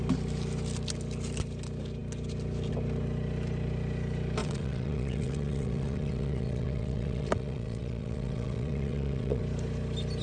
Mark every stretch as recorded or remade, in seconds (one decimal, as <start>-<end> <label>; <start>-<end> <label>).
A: 0.0-4.4 recorded; 4.4-9.4 remade; 9.4-10.2 recorded